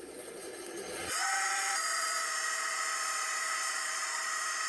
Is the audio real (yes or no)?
no